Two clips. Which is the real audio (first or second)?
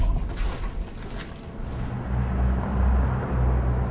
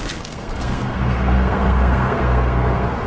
first